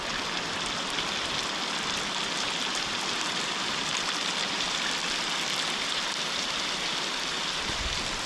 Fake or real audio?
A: fake